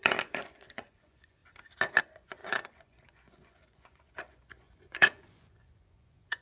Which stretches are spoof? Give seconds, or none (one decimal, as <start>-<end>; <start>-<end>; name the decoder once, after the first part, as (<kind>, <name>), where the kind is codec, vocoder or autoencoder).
0.0-1.4 (vocoder, Vocos); 2.0-6.4